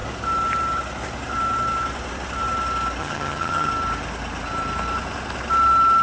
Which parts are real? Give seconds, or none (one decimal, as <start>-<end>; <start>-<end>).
0.0-3.0; 3.7-6.0